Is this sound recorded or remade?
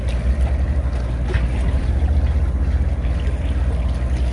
recorded